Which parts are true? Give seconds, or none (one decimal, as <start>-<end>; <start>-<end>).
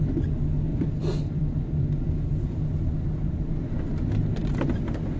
0.0-0.7; 2.6-5.2